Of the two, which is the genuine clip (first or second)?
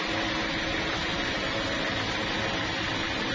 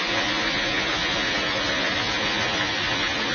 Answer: first